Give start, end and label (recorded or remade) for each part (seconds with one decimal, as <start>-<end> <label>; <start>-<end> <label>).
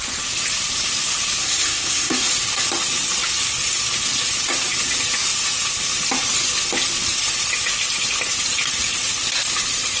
0.0-1.4 recorded; 1.4-2.3 remade; 2.3-10.0 recorded